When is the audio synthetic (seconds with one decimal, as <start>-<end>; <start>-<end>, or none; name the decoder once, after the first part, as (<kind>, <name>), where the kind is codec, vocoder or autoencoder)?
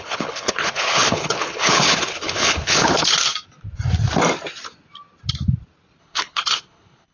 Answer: 0.0-3.2 (codec, HILCodec); 6.0-7.1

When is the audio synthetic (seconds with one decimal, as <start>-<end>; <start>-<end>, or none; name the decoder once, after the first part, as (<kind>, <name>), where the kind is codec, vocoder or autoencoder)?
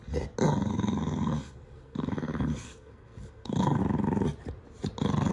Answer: 0.7-3.8 (codec, SNAC)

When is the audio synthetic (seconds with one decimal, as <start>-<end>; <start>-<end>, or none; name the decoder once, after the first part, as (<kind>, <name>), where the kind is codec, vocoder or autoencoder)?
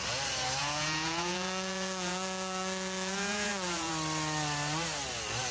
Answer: 0.6-3.9 (vocoder, Vocos)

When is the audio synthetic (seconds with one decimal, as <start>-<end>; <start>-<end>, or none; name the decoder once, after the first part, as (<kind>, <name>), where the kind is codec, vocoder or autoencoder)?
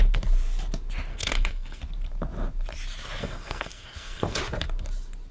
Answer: 1.1-1.8 (codec, SNAC); 3.2-4.4